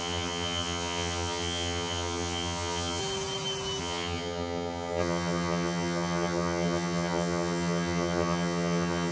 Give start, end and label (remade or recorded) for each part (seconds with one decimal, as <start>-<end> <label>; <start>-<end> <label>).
0.0-3.0 remade; 3.0-3.8 recorded; 3.8-9.1 remade